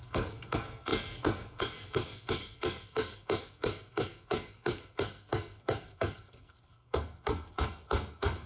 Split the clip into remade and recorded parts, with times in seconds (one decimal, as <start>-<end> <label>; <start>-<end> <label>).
0.0-8.5 remade